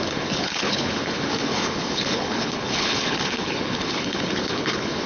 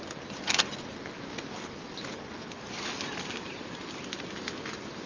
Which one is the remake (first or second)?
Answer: first